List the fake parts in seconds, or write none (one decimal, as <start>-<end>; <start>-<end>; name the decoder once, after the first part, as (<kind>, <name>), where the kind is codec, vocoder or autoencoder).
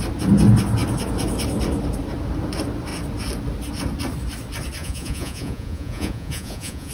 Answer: 4.8-6.9 (vocoder, Vocos)